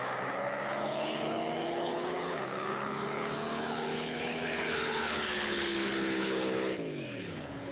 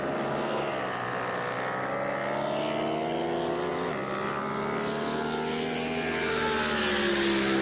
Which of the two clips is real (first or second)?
second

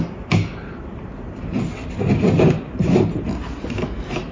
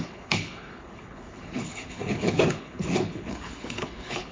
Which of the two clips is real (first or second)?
first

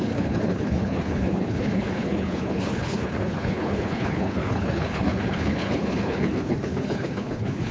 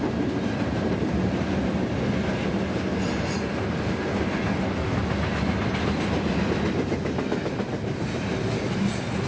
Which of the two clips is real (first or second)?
second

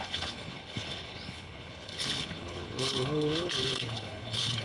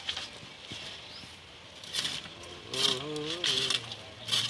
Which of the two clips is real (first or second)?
second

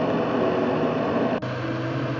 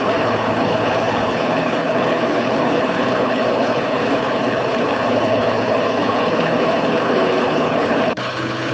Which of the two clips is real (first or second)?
first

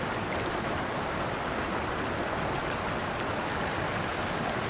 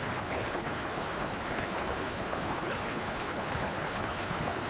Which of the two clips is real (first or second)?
first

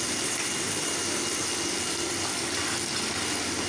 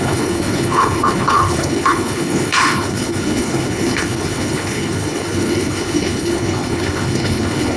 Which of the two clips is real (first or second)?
first